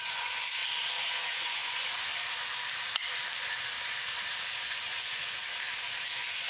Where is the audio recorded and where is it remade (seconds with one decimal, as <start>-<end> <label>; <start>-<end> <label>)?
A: 0.0-0.6 remade; 0.6-1.1 recorded; 1.1-2.1 remade; 2.1-4.6 recorded; 4.6-5.4 remade; 5.4-6.1 recorded; 6.1-6.5 remade

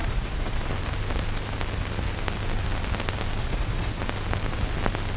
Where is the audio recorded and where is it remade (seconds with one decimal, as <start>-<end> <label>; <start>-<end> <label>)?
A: 0.0-0.7 remade; 0.7-3.4 recorded; 3.4-4.0 remade; 4.0-5.2 recorded

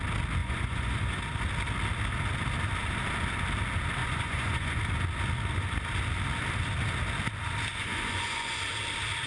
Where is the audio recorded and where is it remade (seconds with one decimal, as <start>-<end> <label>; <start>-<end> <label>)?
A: 0.0-0.4 recorded; 0.4-1.2 remade; 1.2-4.0 recorded; 4.0-4.8 remade; 4.8-7.7 recorded; 7.7-8.6 remade; 8.6-9.3 recorded

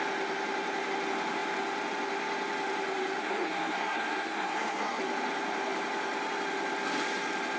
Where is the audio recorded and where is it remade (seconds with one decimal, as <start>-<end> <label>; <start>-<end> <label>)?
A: 0.0-3.2 recorded; 3.2-5.0 remade; 5.0-7.6 recorded